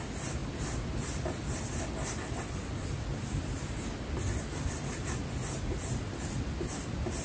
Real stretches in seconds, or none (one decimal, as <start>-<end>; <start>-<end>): 0.0-7.2